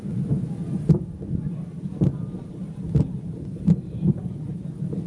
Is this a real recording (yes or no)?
no